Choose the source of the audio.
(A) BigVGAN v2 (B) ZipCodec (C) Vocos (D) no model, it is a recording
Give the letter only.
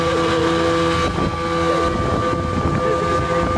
D